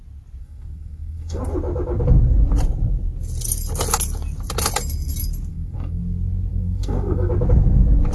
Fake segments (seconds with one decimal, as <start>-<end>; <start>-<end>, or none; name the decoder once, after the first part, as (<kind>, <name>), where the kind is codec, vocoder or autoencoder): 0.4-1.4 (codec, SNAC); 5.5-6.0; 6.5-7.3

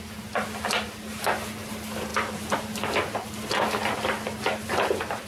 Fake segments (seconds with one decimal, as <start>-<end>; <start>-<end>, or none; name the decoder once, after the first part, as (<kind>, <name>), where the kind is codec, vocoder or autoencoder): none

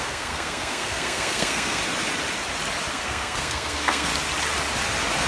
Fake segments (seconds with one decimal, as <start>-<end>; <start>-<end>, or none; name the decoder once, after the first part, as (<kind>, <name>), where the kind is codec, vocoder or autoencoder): 0.0-1.8 (codec, SNAC); 2.9-4.1

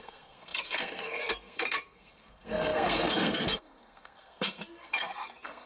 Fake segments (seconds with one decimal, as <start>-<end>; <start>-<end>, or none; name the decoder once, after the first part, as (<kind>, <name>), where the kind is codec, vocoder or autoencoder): 0.0-5.7 (codec, SNAC)

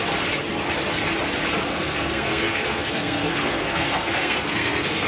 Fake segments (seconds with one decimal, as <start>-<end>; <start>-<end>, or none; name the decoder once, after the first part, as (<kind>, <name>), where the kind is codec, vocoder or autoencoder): 1.7-5.1 (codec, SNAC)

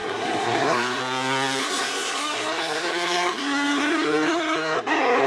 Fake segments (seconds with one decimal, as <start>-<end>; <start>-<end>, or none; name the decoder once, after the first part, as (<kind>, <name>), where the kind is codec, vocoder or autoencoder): 0.0-1.0 (codec, SNAC); 1.6-5.3